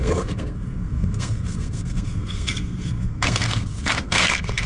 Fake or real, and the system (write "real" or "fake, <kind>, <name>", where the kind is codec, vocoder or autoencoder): fake, codec, SNAC